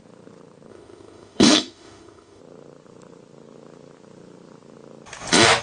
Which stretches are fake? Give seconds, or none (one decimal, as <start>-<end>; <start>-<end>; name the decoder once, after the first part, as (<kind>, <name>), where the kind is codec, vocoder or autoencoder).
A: 0.7-2.4 (autoencoder, DAC-VAE)